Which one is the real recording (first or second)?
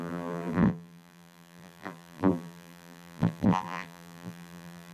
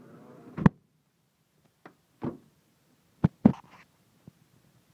second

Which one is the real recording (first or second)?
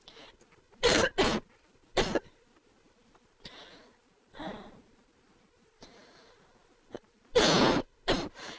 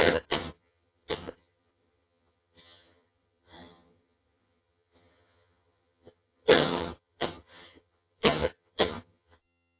first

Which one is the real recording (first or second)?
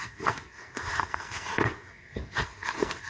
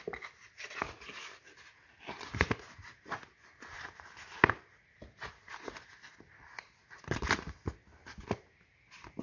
second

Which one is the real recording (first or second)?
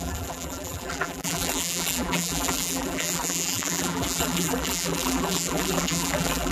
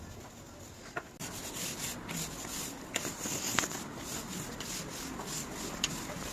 second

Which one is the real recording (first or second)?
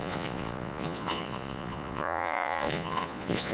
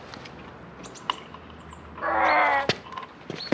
second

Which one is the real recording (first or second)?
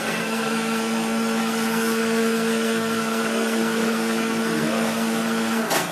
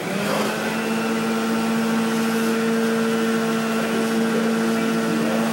second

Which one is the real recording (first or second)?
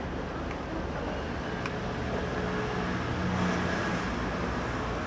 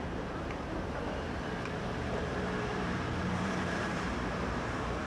first